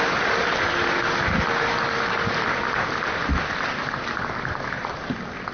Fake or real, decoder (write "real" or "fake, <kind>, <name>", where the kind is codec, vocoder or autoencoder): real